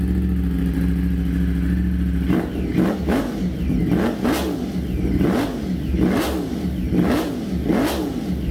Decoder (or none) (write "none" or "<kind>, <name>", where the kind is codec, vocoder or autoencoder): none